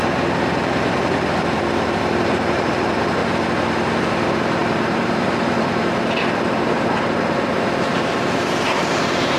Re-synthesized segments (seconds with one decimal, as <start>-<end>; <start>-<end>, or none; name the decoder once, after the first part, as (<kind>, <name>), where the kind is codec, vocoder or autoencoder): 0.0-3.2 (vocoder, BigVGAN v2); 4.0-9.4